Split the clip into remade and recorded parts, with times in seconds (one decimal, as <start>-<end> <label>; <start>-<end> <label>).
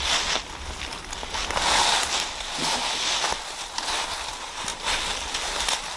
0.0-6.0 recorded